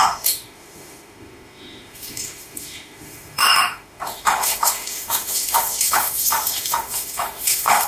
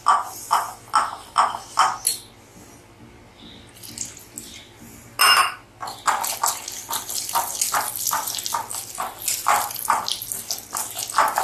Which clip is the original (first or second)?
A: second